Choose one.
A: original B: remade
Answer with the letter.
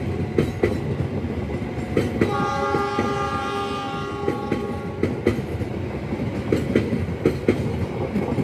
A